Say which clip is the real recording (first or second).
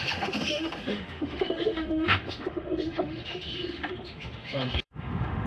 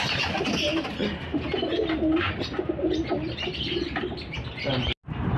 second